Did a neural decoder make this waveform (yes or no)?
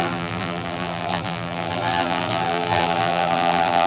yes